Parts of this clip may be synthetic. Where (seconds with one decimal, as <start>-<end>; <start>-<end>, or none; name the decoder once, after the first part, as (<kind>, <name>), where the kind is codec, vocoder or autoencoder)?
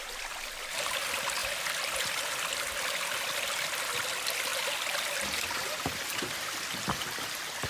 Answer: none